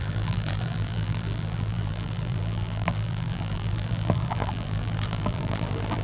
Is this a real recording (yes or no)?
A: no